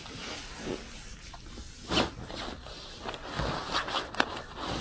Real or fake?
real